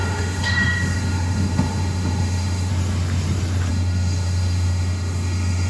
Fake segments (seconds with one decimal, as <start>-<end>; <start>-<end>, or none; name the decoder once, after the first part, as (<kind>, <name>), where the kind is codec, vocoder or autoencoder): 0.0-2.7 (autoencoder, DAC-VAE); 3.7-5.7